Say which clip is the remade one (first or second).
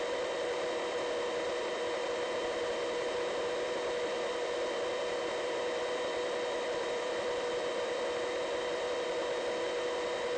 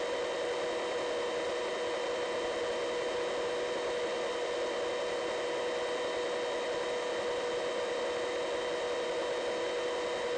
first